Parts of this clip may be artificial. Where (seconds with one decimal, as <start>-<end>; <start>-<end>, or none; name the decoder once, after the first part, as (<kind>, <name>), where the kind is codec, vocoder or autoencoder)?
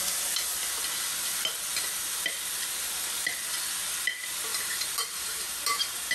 1.7-2.5 (vocoder, BigVGAN v2); 4.5-6.1